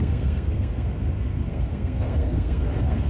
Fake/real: fake